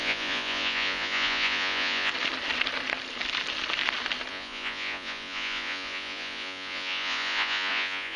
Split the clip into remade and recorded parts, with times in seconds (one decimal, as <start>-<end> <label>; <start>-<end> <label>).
0.0-2.1 remade; 2.1-4.3 recorded; 4.3-8.2 remade